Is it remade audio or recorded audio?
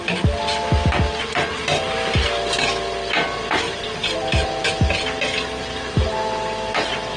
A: recorded